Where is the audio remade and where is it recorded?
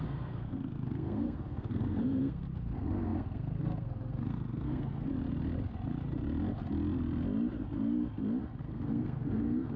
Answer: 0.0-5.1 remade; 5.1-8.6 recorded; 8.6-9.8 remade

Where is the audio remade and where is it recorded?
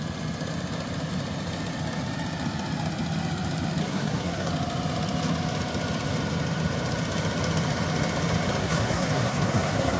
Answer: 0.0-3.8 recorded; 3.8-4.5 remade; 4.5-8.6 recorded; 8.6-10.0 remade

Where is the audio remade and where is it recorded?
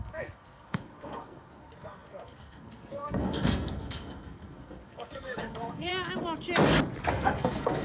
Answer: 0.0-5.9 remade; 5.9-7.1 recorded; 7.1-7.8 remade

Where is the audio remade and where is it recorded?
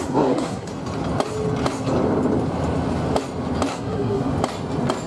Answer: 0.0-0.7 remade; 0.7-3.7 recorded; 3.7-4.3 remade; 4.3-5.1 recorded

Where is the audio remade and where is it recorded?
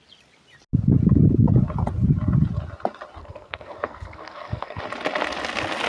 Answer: 0.0-3.2 recorded; 3.2-4.8 remade; 4.8-5.9 recorded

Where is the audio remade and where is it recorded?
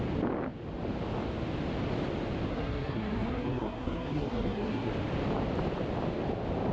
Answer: 0.0-2.5 recorded; 2.5-4.9 remade; 4.9-6.7 recorded